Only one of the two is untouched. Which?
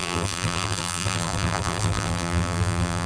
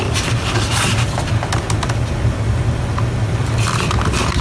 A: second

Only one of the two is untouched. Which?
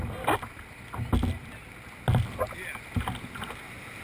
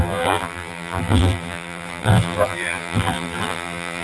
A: first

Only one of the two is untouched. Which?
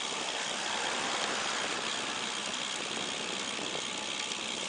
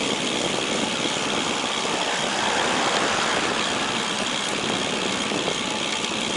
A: first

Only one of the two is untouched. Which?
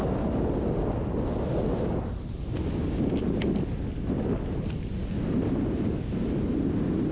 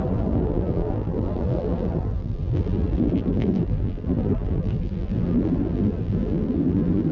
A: first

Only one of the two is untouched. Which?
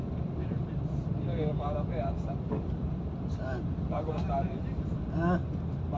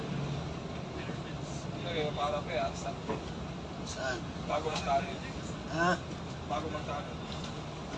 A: second